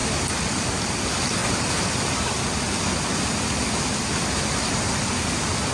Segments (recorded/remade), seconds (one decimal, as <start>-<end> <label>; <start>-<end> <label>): 0.0-5.7 recorded